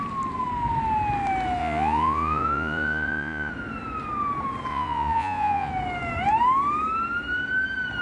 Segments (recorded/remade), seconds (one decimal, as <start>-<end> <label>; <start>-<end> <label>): 0.0-1.6 recorded; 1.6-3.5 remade; 3.5-4.7 recorded; 4.7-5.7 remade; 5.7-8.0 recorded